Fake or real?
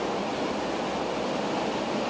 real